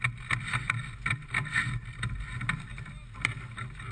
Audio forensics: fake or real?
real